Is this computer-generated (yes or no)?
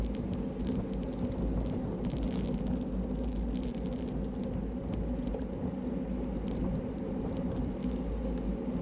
no